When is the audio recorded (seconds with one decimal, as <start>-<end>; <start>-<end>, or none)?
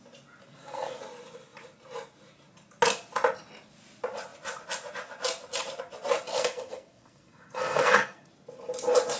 0.0-0.5; 1.0-6.3; 8.3-9.2